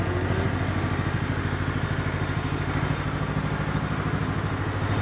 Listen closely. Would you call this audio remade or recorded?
recorded